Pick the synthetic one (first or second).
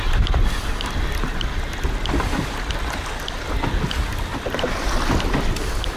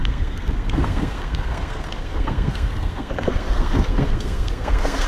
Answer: second